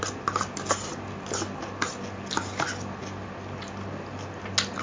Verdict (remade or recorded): recorded